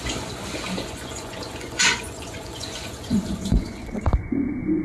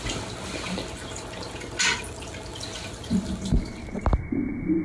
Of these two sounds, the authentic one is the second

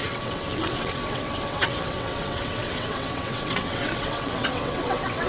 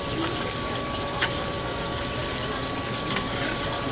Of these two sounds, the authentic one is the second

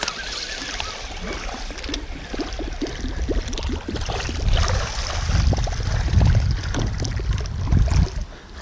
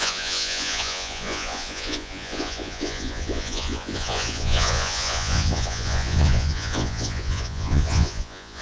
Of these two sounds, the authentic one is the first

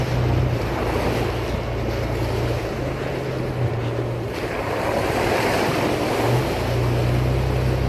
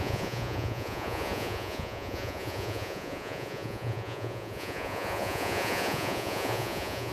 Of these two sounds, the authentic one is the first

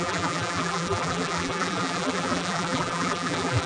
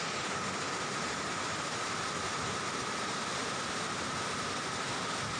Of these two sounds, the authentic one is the second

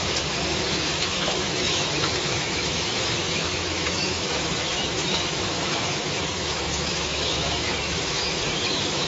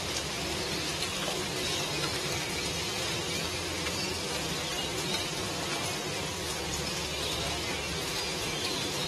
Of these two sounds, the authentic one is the second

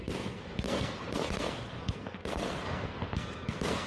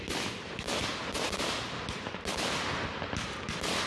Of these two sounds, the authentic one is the second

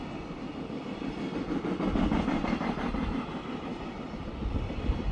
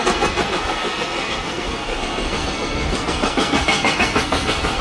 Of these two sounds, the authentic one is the first